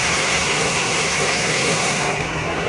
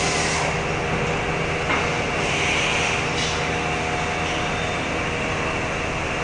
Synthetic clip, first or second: first